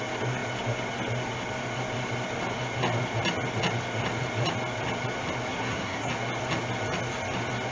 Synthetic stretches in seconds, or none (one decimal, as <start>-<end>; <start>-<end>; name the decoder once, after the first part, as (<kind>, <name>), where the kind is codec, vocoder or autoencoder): 5.5-6.1 (codec, SNAC)